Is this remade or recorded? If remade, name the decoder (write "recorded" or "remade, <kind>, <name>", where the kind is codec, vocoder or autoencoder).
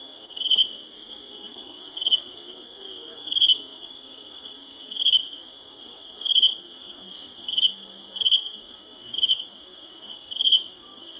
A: remade, codec, SNAC